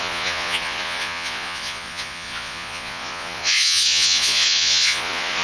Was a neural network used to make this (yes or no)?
yes